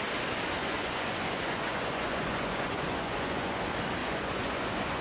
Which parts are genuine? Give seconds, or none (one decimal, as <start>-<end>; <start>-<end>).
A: 0.0-0.6; 3.6-4.0